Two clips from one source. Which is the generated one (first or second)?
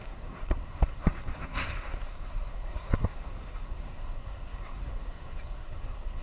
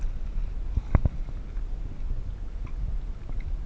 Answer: first